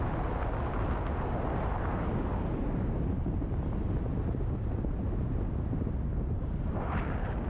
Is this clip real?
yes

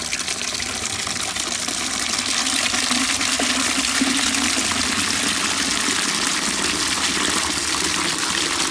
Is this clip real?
yes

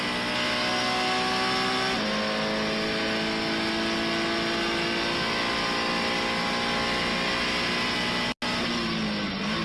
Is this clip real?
yes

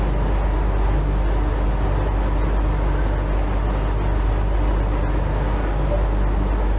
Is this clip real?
yes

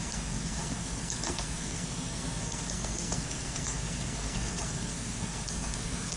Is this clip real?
no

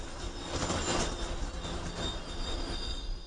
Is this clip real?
yes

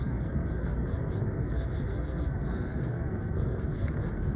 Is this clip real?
no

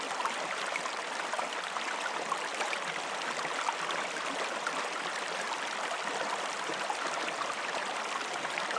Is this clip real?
yes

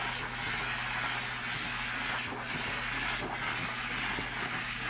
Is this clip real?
yes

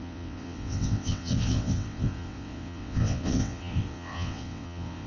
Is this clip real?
no